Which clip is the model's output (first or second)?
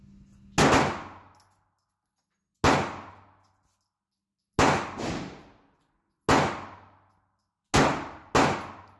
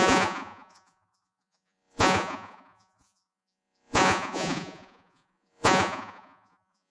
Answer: second